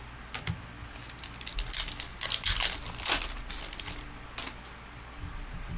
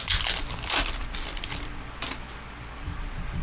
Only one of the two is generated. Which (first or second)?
second